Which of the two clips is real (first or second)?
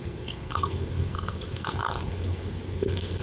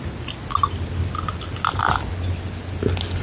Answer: second